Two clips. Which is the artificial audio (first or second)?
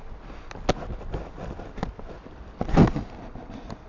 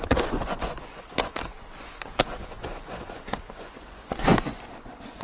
second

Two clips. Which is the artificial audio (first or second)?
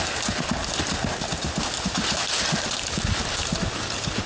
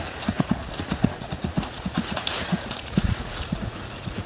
second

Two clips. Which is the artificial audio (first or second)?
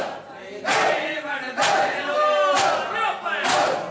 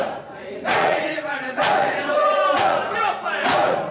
second